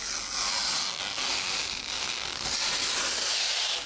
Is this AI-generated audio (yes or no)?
no